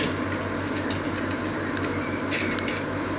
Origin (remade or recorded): recorded